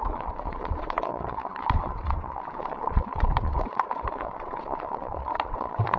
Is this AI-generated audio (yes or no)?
yes